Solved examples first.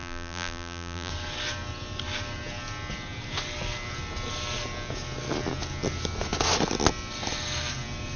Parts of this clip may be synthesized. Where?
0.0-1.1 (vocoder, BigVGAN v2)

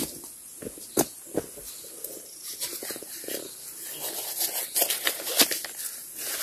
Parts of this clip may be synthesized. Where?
2.8-3.3 (vocoder, BigVGAN v2); 4.6-5.3

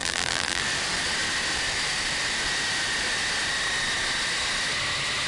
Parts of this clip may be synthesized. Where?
0.0-0.6 (vocoder, BigVGAN v2)

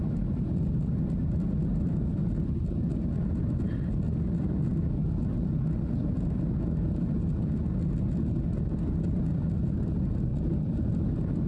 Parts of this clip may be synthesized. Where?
10.3-11.1 (vocoder, BigVGAN v2)

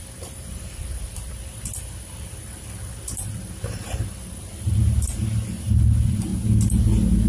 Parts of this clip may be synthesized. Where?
0.0-4.8 (vocoder, BigVGAN v2); 5.8-6.3

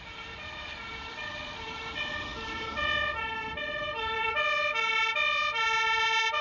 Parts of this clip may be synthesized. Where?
0.9-1.8 (vocoder, BigVGAN v2); 2.3-5.6

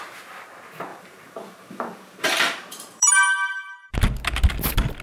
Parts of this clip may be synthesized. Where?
0.9-3.9 (vocoder, BigVGAN v2)